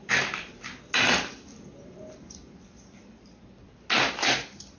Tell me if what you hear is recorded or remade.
recorded